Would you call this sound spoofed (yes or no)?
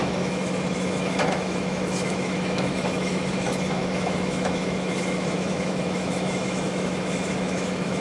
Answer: yes